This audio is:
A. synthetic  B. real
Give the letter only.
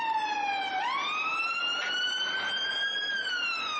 B